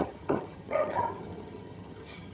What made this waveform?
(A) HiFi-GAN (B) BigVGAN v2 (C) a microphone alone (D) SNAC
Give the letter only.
A